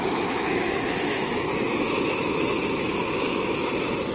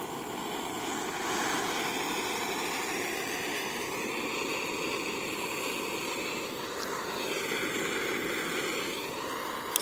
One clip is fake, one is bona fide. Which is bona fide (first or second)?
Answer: second